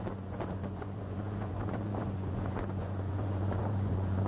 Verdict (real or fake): fake